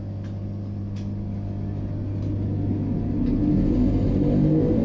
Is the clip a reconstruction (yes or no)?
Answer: no